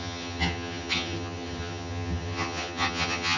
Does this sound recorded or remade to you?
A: remade